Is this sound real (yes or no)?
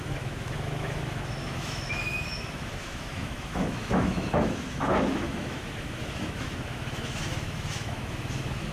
no